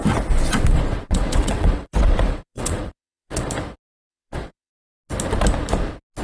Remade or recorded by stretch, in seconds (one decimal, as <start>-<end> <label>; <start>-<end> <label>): 0.0-0.7 recorded; 0.7-3.5 remade; 3.5-4.1 recorded; 4.1-4.7 remade; 4.7-6.2 recorded